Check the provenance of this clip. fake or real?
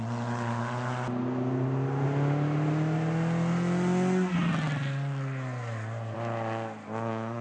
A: real